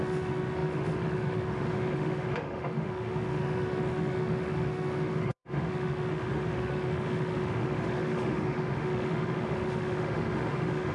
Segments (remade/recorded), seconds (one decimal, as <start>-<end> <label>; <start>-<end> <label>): 0.0-10.9 remade